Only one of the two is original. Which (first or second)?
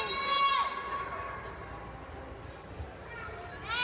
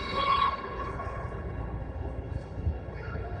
first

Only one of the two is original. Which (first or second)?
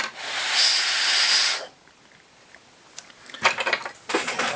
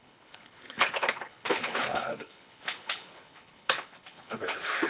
first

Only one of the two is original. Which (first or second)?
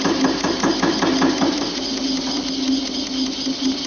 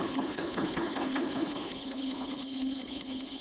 first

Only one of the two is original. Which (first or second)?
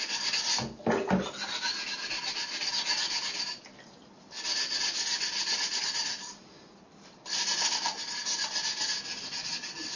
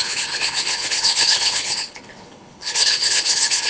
first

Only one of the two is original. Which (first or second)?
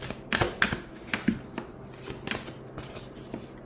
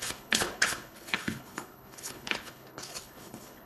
first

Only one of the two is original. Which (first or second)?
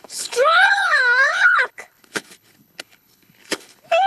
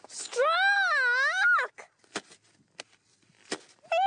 second